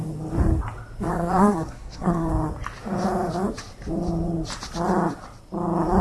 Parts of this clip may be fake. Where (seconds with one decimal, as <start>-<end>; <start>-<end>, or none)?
1.1-2.3